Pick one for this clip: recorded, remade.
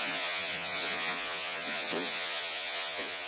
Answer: remade